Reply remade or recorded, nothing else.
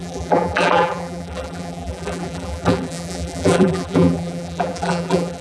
remade